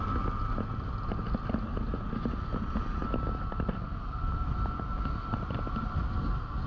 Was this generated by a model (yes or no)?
no